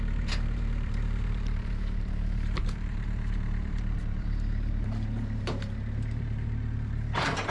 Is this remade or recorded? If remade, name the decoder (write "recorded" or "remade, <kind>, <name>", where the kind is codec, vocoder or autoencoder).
remade, vocoder, BigVGAN v2